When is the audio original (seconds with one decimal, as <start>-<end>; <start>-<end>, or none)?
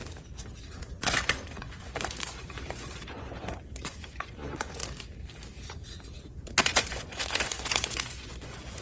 0.0-0.8; 4.8-6.6